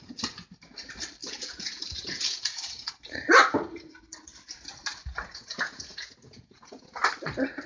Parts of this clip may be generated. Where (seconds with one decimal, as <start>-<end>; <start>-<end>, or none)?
1.2-2.9; 5.3-7.0